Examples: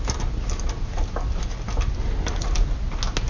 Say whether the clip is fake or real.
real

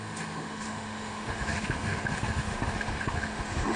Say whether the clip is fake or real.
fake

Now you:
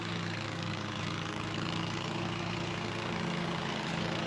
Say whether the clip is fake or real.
fake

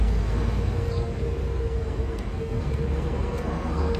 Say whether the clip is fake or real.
fake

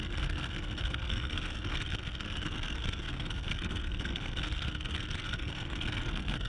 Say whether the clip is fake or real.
fake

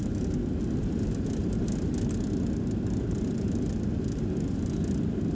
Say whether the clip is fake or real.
real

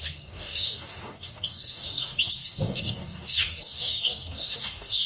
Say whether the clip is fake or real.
fake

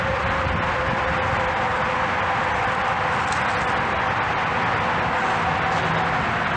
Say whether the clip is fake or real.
real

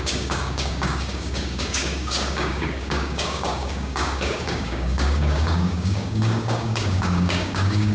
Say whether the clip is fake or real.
fake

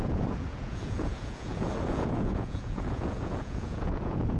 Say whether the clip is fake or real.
fake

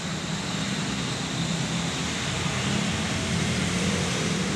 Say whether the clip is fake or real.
real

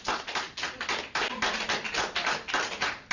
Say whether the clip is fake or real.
real